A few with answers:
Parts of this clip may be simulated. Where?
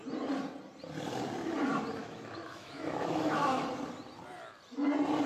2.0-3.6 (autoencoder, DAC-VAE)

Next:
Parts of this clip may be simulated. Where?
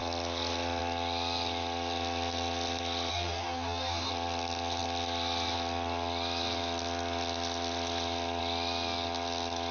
3.1-4.1 (codec, DAC)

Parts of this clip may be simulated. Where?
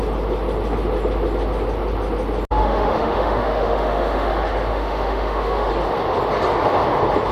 2.6-4.3 (autoencoder, DAC-VAE); 4.7-5.7